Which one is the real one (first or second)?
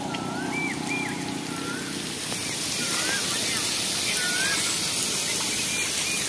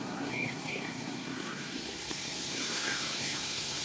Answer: first